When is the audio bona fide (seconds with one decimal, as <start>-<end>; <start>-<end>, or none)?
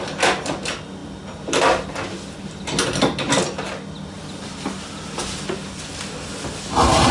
0.0-7.1